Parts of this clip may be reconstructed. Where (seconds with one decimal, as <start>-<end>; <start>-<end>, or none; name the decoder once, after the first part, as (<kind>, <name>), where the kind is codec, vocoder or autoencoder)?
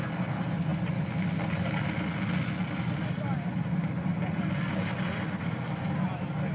none